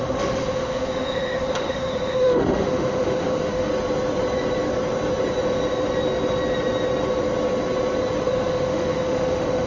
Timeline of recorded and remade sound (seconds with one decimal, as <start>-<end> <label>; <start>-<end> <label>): 0.0-3.7 remade; 3.7-8.2 recorded; 8.2-9.7 remade